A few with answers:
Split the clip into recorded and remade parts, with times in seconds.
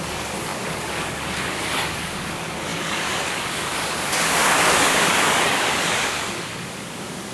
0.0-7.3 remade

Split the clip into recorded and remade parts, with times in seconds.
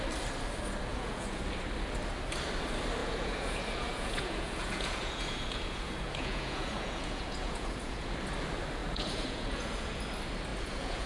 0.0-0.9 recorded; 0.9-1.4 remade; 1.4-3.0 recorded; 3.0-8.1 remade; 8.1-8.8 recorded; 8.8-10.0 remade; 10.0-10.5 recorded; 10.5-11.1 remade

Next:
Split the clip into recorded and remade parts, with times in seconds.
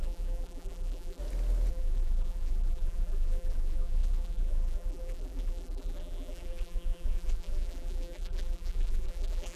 0.0-1.2 remade; 1.2-1.7 recorded; 1.7-9.6 remade